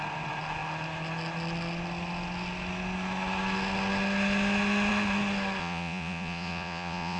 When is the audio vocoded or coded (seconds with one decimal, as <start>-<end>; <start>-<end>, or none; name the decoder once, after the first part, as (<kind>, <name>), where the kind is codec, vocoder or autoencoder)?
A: 5.6-7.2 (vocoder, Vocos)